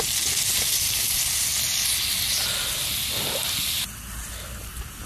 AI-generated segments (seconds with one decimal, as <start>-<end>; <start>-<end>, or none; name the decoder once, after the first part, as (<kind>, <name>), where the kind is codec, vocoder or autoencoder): none